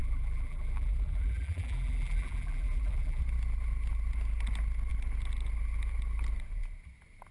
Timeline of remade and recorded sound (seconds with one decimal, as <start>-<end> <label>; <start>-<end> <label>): 0.0-3.2 remade; 3.2-7.3 recorded